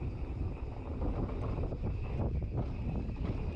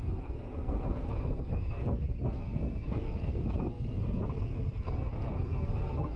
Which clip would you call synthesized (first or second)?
second